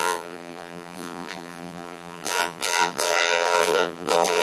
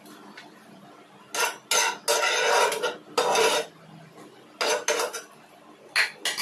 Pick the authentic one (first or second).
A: second